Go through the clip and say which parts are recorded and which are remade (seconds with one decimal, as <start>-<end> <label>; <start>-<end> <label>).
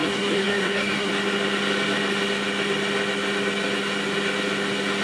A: 0.0-1.1 remade; 1.1-5.0 recorded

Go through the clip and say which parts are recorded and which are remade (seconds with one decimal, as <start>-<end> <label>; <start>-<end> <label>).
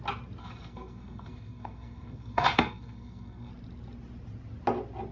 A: 0.0-0.4 recorded; 0.4-3.5 remade; 3.5-5.1 recorded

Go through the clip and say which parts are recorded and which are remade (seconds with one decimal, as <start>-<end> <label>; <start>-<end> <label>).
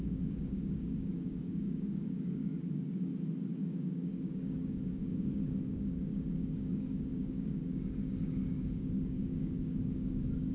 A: 0.0-3.1 remade; 3.1-3.6 recorded; 3.6-10.5 remade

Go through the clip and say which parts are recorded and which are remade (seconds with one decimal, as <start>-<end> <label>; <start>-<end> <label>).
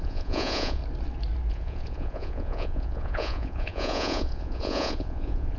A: 0.0-0.8 remade; 0.8-1.5 recorded; 1.5-5.6 remade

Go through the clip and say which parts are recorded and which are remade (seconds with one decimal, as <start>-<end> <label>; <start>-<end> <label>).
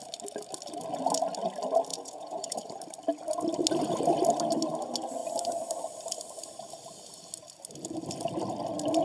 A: 0.0-1.9 recorded; 1.9-2.7 remade; 2.7-9.0 recorded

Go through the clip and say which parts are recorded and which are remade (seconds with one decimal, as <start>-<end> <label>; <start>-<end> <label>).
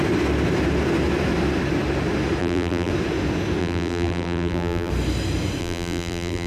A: 0.0-2.4 recorded; 2.4-2.9 remade; 2.9-3.6 recorded; 3.6-4.9 remade; 4.9-5.6 recorded; 5.6-6.5 remade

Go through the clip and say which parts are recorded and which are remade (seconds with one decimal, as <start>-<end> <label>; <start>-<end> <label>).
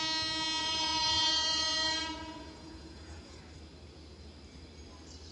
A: 0.0-0.6 recorded; 0.6-3.4 remade; 3.4-5.3 recorded